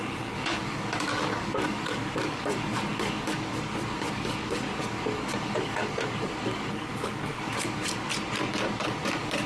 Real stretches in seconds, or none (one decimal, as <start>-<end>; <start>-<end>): 8.1-9.0